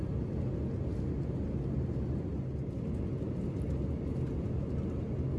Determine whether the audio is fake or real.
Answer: real